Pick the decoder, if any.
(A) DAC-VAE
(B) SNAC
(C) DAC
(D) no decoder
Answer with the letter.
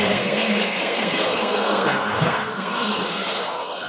B